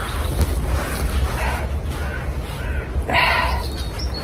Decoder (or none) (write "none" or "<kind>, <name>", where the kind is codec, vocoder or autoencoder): none